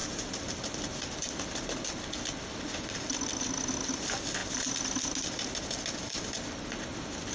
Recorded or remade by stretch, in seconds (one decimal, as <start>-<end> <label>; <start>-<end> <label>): 0.0-7.3 recorded